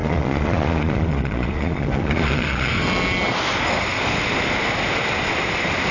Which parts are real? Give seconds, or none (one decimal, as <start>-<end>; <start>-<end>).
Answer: 2.7-5.9